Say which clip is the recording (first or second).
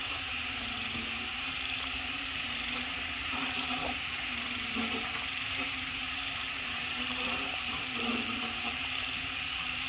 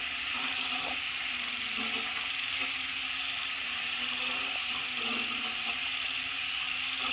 second